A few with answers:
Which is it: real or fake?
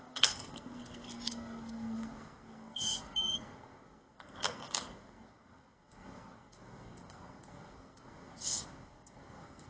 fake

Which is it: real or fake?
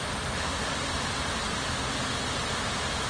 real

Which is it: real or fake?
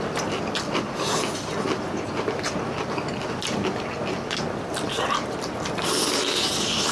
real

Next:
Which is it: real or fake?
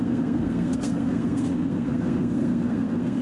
fake